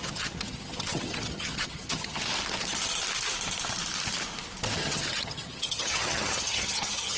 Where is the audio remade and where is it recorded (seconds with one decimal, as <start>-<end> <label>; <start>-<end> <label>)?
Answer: 0.0-2.2 remade; 2.2-4.8 recorded; 4.8-7.2 remade